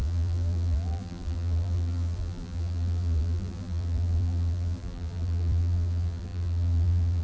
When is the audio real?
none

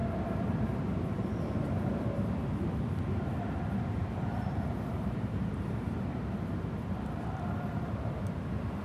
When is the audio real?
1.4-4.0

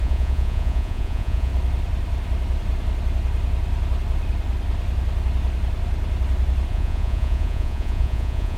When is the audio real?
1.5-6.7

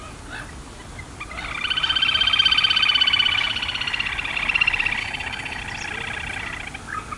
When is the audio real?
0.0-5.0; 5.6-7.2

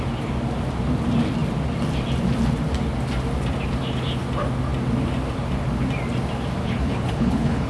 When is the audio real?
0.0-6.6

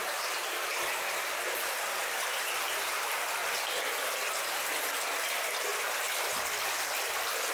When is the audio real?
3.0-5.7; 6.9-7.5

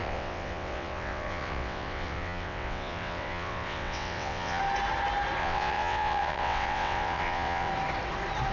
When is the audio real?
4.6-5.4; 7.7-8.5

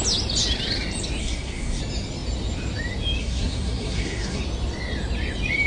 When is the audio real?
0.0-1.2; 1.8-3.2; 4.4-5.7